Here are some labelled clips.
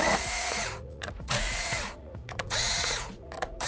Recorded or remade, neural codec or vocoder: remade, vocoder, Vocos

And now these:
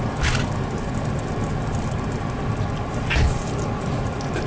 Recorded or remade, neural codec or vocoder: recorded